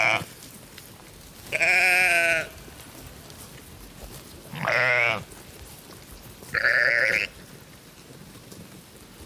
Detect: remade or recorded recorded